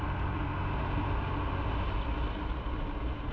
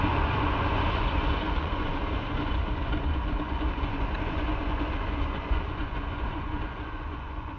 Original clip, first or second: first